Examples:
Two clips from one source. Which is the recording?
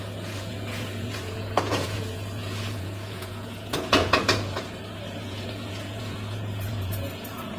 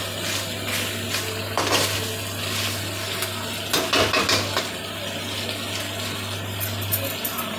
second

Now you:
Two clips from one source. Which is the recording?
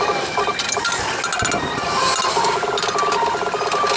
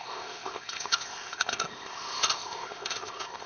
first